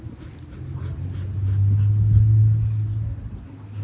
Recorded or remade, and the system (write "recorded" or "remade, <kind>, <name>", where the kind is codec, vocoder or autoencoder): recorded